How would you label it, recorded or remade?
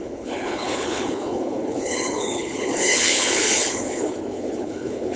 remade